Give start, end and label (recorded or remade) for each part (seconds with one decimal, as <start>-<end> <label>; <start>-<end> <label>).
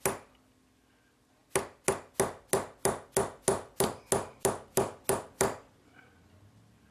0.0-6.9 recorded